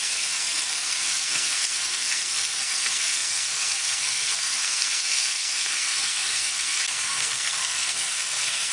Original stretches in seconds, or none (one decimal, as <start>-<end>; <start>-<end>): none